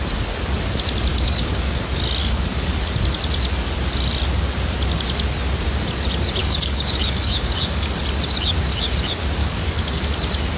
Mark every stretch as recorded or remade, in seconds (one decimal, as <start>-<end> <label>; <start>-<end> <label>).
0.0-1.1 recorded; 1.1-1.8 remade; 1.8-2.2 recorded; 2.2-2.7 remade; 2.7-6.4 recorded; 6.4-8.0 remade; 8.0-9.4 recorded; 9.4-10.0 remade; 10.0-10.6 recorded